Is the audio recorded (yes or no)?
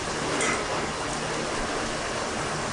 yes